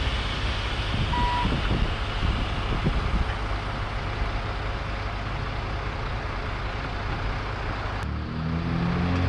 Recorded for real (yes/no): yes